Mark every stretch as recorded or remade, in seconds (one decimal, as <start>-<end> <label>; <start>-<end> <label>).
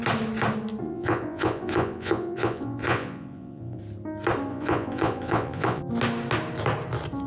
0.0-0.8 recorded; 0.8-3.8 remade; 3.8-4.5 recorded; 4.5-5.8 remade; 5.8-7.3 recorded